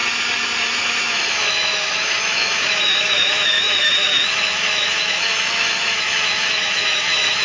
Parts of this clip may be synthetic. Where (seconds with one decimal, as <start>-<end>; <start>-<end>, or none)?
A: 0.8-7.4